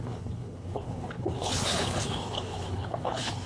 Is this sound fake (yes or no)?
yes